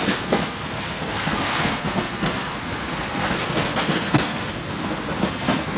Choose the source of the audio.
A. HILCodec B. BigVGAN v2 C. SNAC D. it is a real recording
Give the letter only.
C